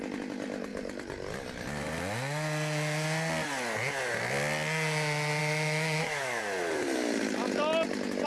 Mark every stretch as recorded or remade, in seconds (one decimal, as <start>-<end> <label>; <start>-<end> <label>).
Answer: 0.0-5.4 recorded; 5.4-6.4 remade; 6.4-8.3 recorded